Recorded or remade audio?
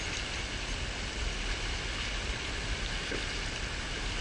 recorded